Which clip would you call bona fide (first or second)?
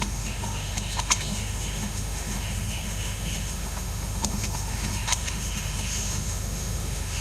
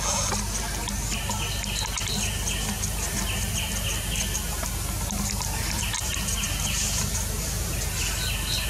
second